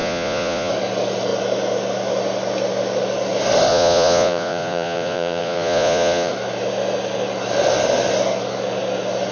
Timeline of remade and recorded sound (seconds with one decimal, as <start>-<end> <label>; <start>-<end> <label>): 0.0-0.7 remade; 0.7-3.7 recorded; 3.7-6.3 remade; 6.3-9.3 recorded